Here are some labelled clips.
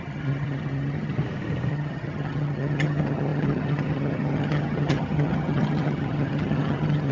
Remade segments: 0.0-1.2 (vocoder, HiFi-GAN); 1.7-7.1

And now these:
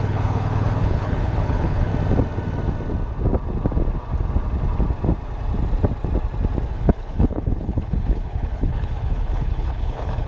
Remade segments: 0.0-1.9 (codec, HILCodec); 6.7-10.3

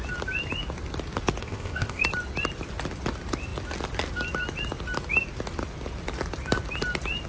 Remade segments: 1.4-2.0 (codec, ZipCodec)